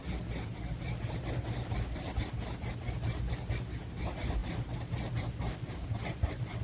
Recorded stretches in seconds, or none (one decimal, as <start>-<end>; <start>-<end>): 0.0-6.6